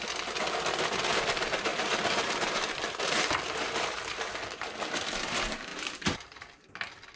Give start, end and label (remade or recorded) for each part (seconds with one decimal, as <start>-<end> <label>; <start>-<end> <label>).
0.0-1.7 recorded; 1.7-5.0 remade; 5.0-5.7 recorded; 5.7-6.7 remade; 6.7-7.2 recorded